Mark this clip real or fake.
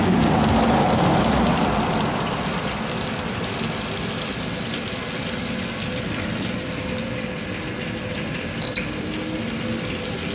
real